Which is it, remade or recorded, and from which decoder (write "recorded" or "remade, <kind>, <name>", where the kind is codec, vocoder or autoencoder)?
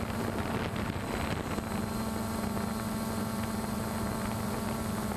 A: recorded